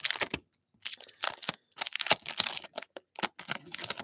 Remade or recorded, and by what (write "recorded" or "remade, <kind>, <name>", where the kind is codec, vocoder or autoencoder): recorded